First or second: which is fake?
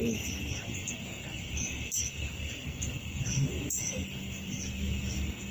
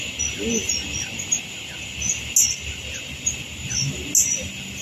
first